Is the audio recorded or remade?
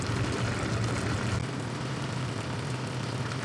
recorded